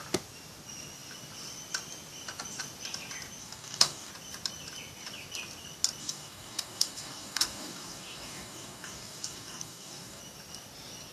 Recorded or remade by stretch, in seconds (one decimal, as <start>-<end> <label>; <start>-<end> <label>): 0.0-3.4 recorded; 3.4-4.1 remade; 4.1-6.0 recorded; 6.0-10.2 remade; 10.2-11.1 recorded